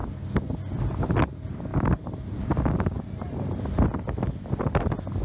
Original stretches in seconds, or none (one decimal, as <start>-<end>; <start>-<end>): 0.0-5.2